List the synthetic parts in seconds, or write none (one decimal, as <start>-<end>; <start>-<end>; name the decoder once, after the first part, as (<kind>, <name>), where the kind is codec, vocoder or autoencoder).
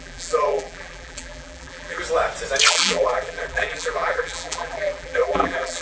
0.0-2.0 (vocoder, BigVGAN v2); 2.7-5.8